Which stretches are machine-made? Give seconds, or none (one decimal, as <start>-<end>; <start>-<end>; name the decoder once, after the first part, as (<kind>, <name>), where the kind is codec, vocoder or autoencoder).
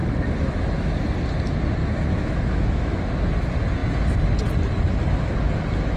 0.0-0.7 (autoencoder, DAC-VAE); 1.8-3.0